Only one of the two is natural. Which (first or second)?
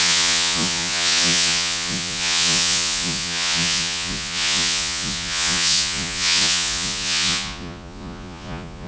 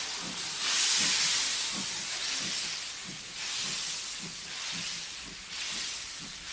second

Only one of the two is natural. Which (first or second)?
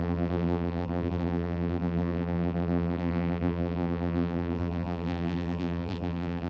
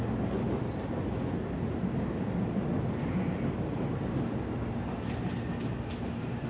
second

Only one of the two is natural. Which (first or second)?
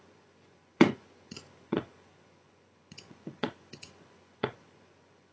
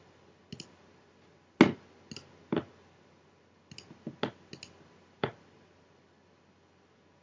second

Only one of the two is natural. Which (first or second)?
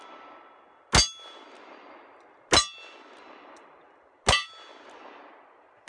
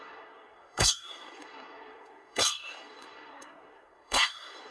first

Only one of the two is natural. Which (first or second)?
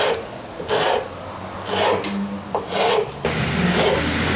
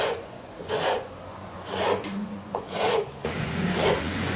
first